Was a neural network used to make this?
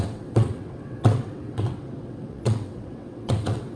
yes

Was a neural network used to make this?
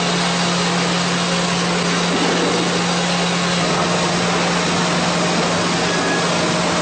no